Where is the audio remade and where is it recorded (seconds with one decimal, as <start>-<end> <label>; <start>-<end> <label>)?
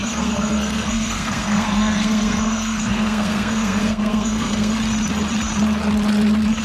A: 0.0-4.7 remade; 4.7-6.6 recorded